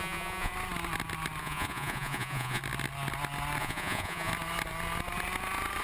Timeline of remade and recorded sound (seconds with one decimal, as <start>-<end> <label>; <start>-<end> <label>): 0.0-0.5 remade; 0.5-1.4 recorded; 1.4-2.6 remade; 2.6-3.6 recorded; 3.6-4.3 remade; 4.3-5.8 recorded